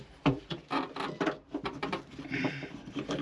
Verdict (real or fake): fake